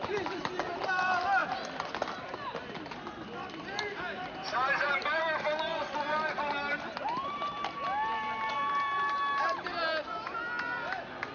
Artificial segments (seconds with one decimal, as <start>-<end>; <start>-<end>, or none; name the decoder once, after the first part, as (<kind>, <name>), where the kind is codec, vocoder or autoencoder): none